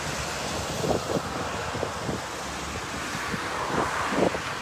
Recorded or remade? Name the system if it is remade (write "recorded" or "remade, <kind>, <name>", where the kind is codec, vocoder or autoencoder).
recorded